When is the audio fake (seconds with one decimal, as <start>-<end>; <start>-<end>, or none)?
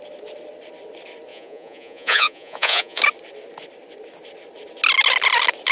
1.3-3.0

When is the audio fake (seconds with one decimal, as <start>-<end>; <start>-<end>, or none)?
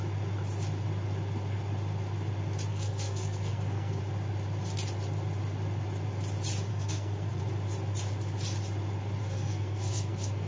2.7-4.0; 6.7-7.4; 9.2-10.5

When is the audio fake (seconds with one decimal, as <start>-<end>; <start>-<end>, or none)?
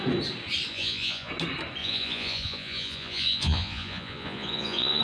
0.7-1.3; 1.8-5.0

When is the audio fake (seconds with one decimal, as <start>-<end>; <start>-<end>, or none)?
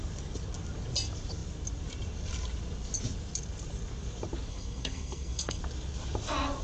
4.5-5.6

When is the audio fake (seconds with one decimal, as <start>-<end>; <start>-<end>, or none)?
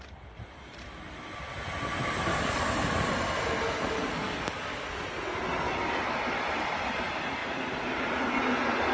2.3-3.1; 4.1-4.8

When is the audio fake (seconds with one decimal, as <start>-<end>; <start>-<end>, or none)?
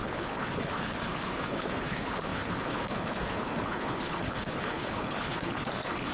0.0-6.1